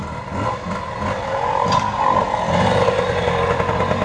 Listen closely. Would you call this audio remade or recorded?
recorded